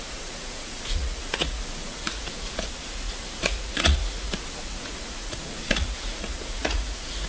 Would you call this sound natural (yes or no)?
no